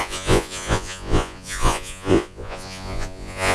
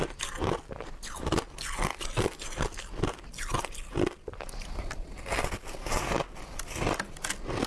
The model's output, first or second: first